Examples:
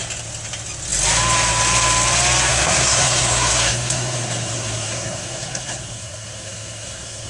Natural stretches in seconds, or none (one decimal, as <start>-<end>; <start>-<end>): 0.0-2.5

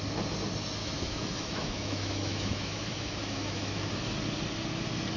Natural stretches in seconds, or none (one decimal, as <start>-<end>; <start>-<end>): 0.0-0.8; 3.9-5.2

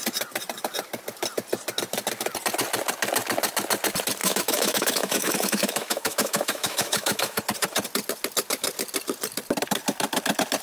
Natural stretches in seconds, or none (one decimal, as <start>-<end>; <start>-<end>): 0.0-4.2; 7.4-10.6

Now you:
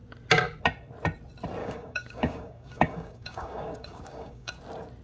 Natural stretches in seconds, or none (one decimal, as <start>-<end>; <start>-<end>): 0.0-1.6; 4.6-5.0

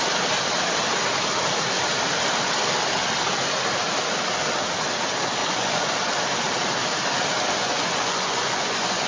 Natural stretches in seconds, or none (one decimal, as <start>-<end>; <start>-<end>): 0.0-5.4; 6.0-7.6

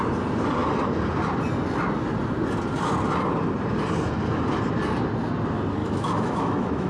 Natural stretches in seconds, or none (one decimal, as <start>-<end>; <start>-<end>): 0.0-5.8

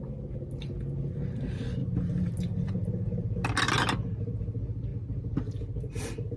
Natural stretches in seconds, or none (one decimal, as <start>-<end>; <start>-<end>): 0.0-6.4